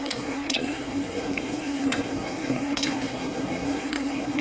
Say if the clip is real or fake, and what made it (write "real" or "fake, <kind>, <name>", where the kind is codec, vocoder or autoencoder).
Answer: fake, codec, SNAC